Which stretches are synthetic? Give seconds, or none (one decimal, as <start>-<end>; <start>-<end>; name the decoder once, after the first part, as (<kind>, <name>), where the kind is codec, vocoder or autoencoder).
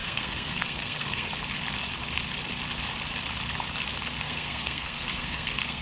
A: 0.0-1.3 (codec, SNAC); 4.2-5.8